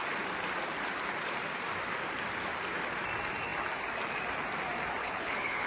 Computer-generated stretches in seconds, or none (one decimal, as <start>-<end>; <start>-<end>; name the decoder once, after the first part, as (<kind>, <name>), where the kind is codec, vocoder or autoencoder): 5.0-5.7 (codec, HILCodec)